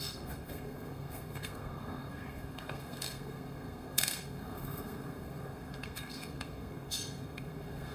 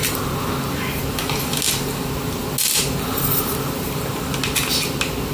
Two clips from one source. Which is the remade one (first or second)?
first